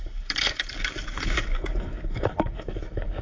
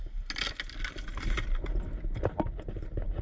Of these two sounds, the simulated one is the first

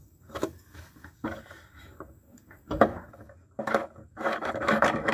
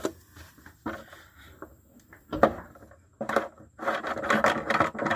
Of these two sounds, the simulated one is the first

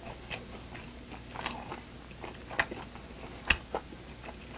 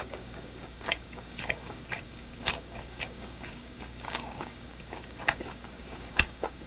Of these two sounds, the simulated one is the second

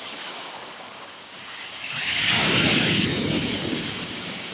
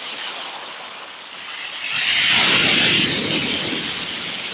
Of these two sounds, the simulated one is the first